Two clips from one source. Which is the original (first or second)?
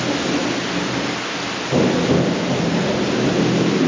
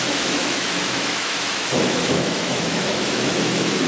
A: first